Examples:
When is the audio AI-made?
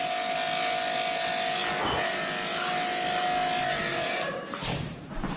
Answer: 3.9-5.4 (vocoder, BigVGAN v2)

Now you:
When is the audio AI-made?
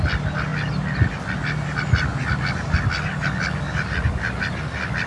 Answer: none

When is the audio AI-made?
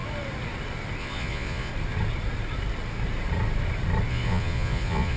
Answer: 1.0-1.7 (vocoder, Vocos); 4.1-5.2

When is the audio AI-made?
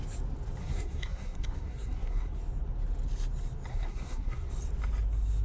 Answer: 0.6-2.4 (codec, SNAC); 3.7-4.5